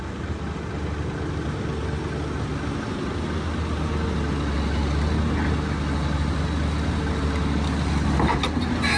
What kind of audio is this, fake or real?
real